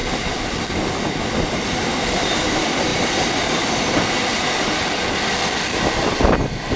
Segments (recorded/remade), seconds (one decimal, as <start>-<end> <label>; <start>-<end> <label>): 0.0-0.6 remade; 0.6-2.9 recorded; 2.9-4.1 remade; 4.1-6.8 recorded